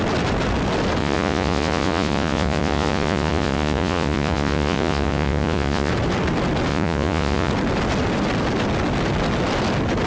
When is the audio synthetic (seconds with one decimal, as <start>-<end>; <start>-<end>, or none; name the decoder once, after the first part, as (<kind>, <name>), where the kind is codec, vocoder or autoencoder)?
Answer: 1.0-5.9 (vocoder, Vocos); 6.7-7.5